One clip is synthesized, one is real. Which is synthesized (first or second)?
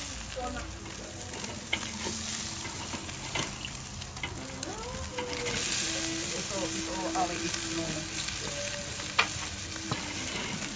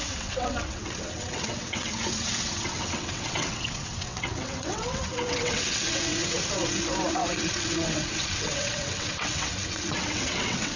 second